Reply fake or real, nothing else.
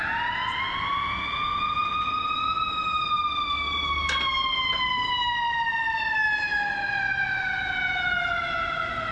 real